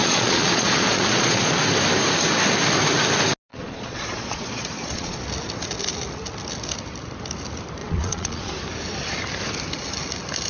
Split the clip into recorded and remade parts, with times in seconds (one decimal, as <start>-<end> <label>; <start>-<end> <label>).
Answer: 0.0-1.6 remade; 1.6-3.5 recorded; 3.5-5.2 remade; 5.2-7.8 recorded; 7.8-8.5 remade; 8.5-10.5 recorded